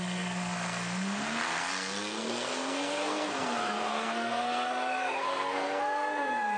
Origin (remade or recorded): remade